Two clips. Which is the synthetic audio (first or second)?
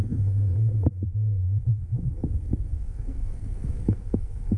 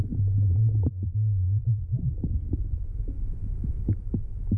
first